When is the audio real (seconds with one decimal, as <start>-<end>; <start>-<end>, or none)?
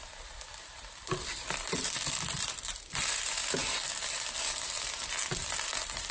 3.4-4.4